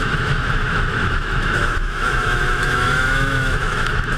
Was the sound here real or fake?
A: fake